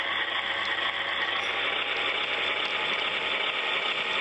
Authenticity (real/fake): real